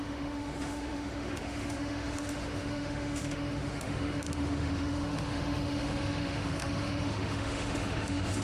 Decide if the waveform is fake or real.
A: fake